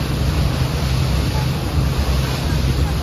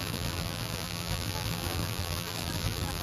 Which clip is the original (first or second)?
first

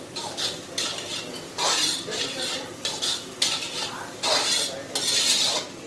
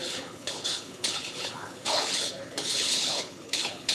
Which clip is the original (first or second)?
first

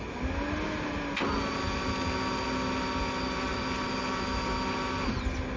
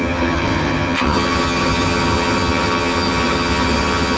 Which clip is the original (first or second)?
first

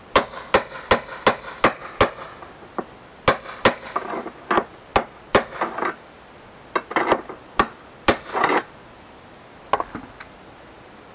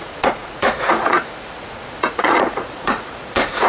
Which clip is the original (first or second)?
first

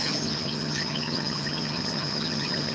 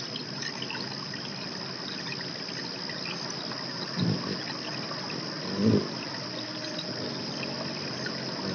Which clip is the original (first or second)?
second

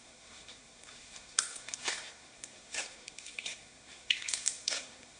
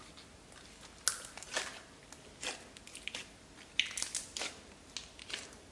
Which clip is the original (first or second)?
second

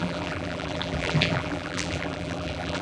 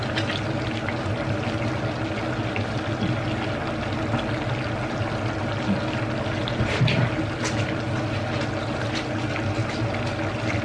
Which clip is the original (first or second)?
second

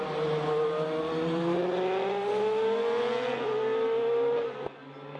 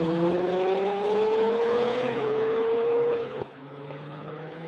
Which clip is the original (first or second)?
first